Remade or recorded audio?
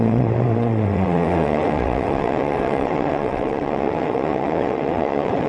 remade